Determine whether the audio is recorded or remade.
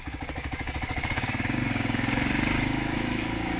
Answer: remade